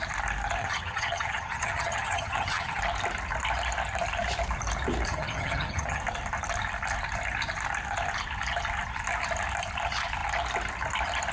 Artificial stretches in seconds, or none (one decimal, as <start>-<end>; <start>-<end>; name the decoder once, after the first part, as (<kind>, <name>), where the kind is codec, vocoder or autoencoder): 0.6-2.8 (vocoder, HiFi-GAN); 5.1-6.0